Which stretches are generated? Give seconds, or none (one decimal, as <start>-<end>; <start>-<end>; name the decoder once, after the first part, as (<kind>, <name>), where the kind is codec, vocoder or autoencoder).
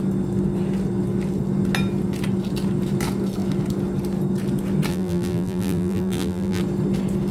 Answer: 4.9-6.6 (vocoder, BigVGAN v2)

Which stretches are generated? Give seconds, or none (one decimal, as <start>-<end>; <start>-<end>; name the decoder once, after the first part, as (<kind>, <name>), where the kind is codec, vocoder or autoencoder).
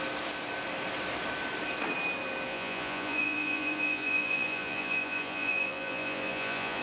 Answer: 2.5-6.8 (vocoder, Vocos)